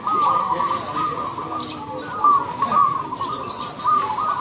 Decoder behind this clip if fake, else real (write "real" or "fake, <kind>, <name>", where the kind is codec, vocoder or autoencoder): real